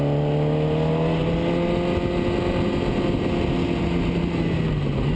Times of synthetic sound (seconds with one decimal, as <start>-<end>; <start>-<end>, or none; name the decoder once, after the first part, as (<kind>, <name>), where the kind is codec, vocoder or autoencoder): none